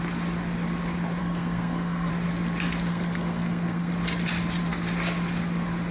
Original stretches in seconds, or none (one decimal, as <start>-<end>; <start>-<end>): 0.0-1.2; 2.1-2.9; 3.9-5.9